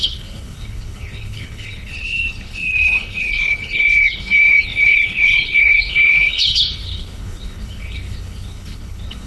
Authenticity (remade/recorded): remade